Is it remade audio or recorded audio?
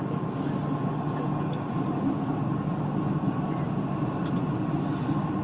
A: recorded